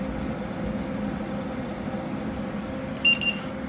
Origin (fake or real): real